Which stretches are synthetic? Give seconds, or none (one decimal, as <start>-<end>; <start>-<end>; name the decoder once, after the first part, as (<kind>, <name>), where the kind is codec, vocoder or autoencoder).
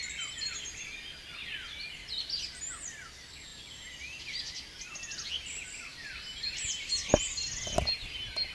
none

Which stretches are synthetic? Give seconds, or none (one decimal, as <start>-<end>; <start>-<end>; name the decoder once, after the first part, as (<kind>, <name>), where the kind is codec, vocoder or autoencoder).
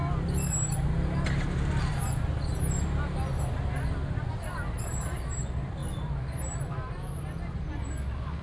none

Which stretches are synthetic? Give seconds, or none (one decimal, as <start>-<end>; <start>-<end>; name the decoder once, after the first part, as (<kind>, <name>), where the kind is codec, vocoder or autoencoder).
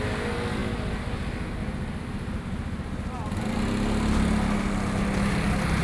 none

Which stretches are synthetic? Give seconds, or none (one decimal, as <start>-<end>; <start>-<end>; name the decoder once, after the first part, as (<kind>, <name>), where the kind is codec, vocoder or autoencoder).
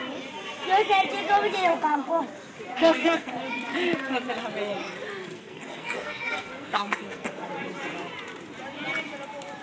1.7-2.2 (codec, SNAC); 2.8-3.3; 5.2-7.5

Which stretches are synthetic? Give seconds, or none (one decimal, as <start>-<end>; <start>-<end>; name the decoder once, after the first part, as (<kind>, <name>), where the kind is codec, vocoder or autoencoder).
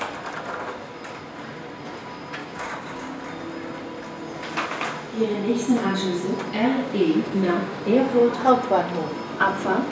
2.4-3.2 (codec, DAC); 6.7-7.8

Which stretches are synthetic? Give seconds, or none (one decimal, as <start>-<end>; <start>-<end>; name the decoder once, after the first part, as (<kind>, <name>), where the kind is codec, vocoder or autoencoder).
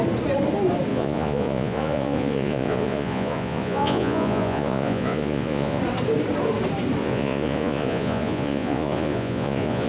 0.9-5.8 (vocoder, Vocos); 7.0-9.9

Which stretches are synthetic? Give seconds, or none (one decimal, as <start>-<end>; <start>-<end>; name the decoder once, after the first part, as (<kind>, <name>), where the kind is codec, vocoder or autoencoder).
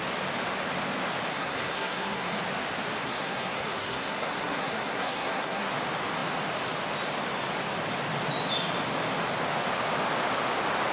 1.3-2.4 (codec, SNAC); 3.0-5.7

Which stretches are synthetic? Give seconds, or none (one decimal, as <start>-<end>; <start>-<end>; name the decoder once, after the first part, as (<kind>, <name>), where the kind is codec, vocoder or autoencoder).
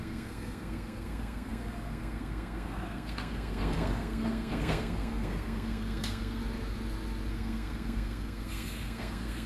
0.0-6.4 (codec, SNAC); 7.3-9.5